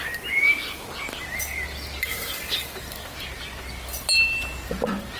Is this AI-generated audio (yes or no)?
no